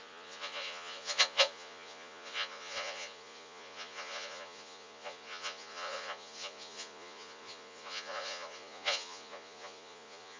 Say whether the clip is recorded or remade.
remade